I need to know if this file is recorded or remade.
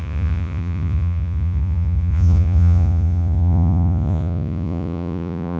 remade